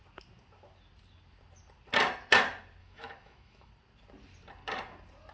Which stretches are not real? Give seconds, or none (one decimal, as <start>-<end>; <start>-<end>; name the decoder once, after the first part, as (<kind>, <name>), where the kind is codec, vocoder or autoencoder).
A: 2.8-3.7 (autoencoder, DAC-VAE)